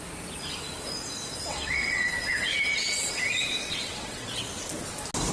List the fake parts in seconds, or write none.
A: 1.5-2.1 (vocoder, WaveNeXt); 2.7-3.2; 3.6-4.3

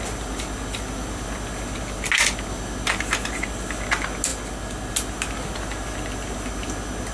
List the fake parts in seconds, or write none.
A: none